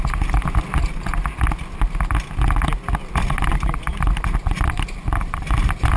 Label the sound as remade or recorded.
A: recorded